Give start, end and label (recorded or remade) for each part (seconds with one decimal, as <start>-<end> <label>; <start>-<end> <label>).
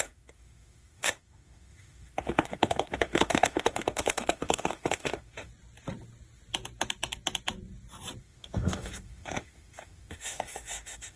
0.0-5.5 remade; 5.5-8.2 recorded; 8.2-11.2 remade